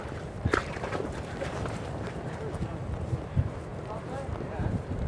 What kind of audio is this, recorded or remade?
remade